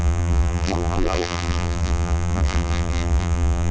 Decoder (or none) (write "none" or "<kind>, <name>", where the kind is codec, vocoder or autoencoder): vocoder, BigVGAN v2